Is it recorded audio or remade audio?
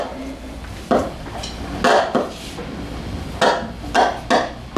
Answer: recorded